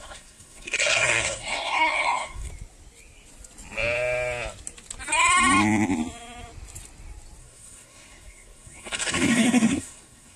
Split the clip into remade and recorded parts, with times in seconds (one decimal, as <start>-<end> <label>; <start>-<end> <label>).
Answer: 0.0-2.5 remade; 2.5-7.4 recorded; 7.4-10.4 remade